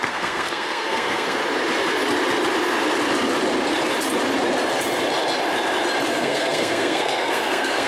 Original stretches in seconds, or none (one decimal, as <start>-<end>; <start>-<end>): 1.4-6.1